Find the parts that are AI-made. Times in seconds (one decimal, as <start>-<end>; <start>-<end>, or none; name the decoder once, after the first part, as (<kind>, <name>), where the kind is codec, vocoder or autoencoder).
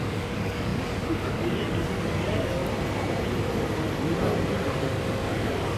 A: 0.0-2.6 (codec, DAC); 4.7-5.8